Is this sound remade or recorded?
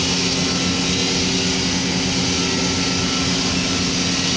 recorded